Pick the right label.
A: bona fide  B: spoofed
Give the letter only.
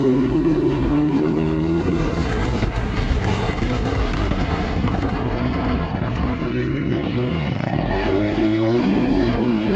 B